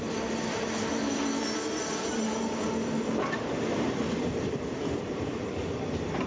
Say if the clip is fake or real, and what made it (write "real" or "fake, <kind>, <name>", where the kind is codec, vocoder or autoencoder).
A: real